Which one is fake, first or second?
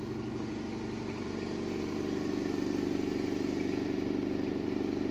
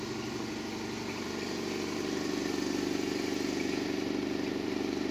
second